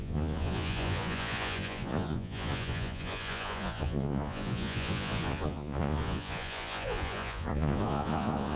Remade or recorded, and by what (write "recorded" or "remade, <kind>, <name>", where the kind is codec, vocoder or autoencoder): remade, vocoder, Vocos